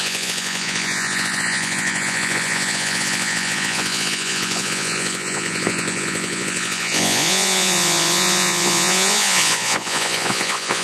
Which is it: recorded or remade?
remade